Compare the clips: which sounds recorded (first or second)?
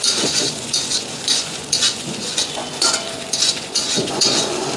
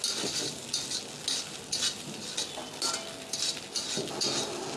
second